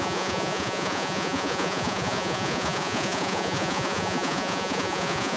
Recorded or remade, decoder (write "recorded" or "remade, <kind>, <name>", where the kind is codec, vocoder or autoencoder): remade, vocoder, Vocos